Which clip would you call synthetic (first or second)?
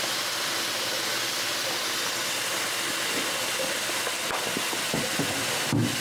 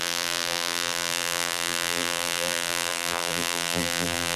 second